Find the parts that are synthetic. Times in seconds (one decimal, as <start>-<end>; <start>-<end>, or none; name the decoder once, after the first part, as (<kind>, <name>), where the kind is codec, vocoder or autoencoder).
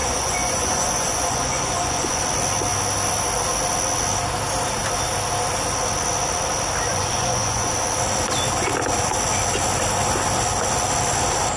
0.0-2.2 (vocoder, Vocos); 6.9-7.7